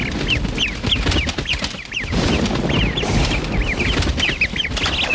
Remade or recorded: recorded